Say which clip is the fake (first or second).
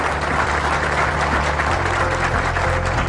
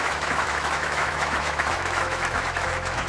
second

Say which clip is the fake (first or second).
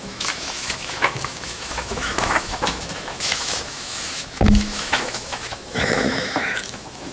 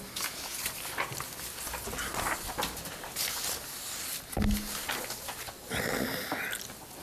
first